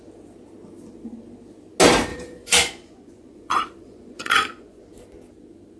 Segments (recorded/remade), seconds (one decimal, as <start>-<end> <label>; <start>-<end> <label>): 0.0-2.1 recorded; 2.1-4.8 remade; 4.8-5.8 recorded